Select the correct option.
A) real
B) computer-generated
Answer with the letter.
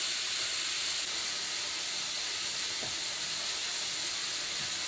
A